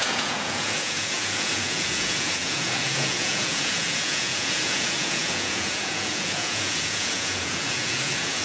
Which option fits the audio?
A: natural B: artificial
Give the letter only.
B